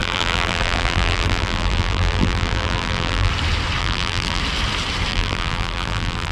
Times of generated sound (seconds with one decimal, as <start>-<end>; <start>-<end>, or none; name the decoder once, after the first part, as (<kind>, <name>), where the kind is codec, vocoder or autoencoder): 0.0-3.3 (vocoder, BigVGAN v2); 3.8-4.4; 5.1-6.3